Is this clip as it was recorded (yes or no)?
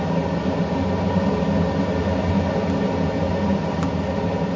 yes